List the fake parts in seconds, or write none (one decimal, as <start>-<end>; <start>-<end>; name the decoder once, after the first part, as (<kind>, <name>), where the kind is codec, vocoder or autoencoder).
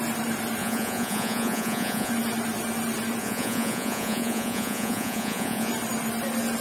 0.6-2.1 (vocoder, Vocos); 3.2-5.7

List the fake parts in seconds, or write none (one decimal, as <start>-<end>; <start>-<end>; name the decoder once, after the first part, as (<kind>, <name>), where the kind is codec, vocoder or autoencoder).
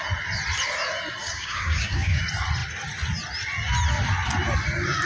1.2-2.2 (codec, DAC)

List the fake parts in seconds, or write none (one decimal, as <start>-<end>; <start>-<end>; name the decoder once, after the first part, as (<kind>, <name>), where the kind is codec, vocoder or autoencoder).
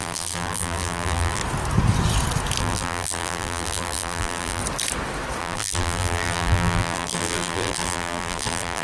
0.0-1.4 (vocoder, BigVGAN v2); 2.6-4.6; 5.4-8.8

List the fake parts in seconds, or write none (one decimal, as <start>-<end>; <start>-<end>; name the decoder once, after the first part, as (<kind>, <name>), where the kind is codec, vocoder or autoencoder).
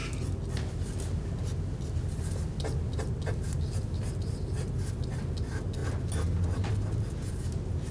none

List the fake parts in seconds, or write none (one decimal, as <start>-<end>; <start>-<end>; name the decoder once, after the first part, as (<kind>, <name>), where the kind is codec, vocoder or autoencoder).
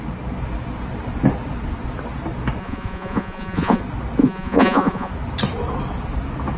2.6-3.8 (vocoder, Vocos); 4.2-5.1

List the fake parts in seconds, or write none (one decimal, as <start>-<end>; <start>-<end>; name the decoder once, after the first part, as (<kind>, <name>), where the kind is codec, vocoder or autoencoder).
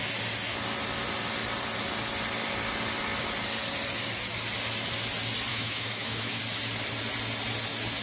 5.5-6.4 (autoencoder, DAC-VAE)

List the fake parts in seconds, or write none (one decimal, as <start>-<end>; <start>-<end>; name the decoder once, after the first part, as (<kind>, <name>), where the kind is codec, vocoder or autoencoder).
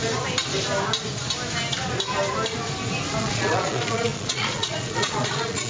3.2-5.7 (vocoder, Vocos)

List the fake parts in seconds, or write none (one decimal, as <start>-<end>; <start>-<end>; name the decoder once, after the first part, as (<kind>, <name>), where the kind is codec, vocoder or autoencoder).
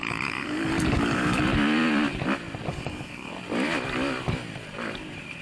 0.0-1.4 (codec, DAC); 2.7-3.3